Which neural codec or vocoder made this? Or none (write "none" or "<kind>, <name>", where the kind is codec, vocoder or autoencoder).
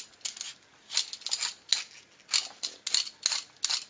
none